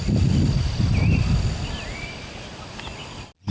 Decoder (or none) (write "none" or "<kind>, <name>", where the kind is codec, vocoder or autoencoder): none